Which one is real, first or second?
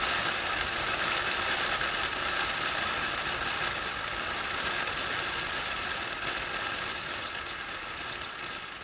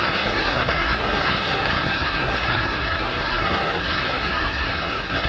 first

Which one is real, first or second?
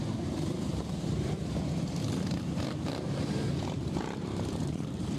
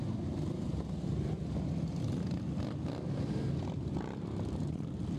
second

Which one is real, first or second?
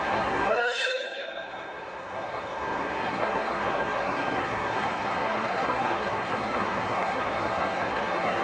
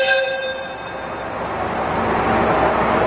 second